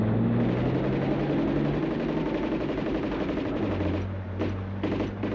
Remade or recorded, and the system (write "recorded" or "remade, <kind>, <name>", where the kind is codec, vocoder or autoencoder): recorded